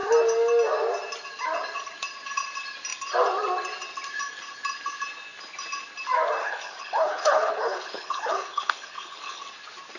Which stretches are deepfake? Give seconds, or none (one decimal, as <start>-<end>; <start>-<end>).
6.4-9.4